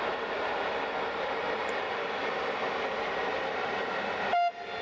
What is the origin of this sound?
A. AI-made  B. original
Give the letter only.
B